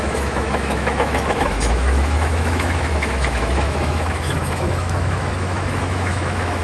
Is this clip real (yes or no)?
no